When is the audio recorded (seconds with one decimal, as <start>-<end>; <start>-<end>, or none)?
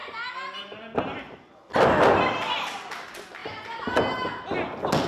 0.0-5.1